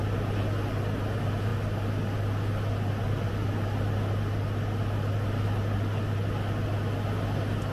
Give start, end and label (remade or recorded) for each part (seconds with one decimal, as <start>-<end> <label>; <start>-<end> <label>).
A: 0.0-7.7 recorded